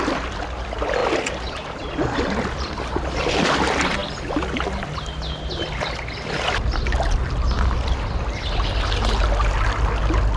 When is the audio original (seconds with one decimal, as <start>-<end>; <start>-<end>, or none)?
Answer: 0.0-10.4